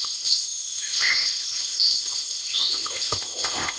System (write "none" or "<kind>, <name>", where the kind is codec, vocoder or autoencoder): codec, ZipCodec